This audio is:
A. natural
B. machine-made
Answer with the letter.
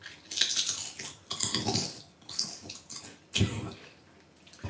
A